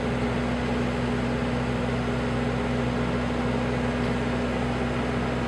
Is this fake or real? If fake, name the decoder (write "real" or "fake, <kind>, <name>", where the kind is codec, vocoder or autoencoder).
real